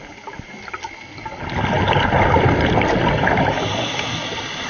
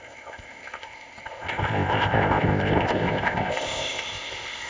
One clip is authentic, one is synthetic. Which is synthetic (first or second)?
second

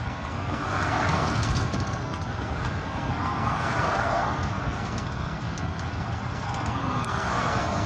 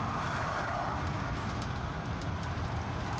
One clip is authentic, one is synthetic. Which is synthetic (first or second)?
first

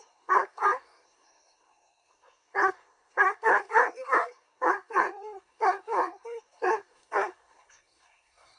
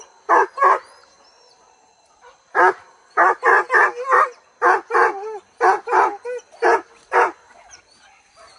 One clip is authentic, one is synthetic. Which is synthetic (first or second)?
first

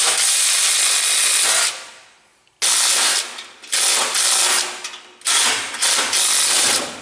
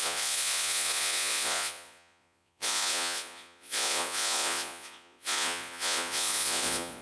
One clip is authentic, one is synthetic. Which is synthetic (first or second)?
second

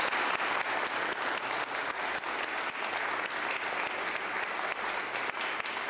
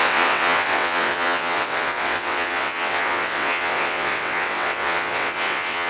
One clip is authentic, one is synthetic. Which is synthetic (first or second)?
second